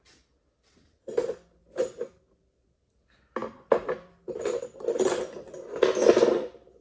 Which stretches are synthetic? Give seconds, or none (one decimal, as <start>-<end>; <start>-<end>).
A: 1.6-2.2; 3.4-4.6